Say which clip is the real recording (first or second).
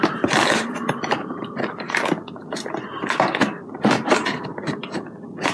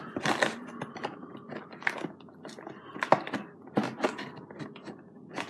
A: second